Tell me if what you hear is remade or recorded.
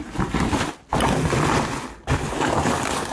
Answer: recorded